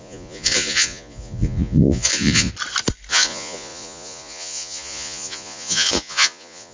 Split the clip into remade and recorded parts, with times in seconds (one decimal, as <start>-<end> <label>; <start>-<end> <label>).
0.0-2.5 remade; 2.5-3.1 recorded; 3.1-6.7 remade